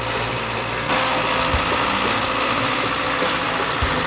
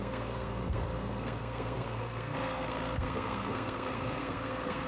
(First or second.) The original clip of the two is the first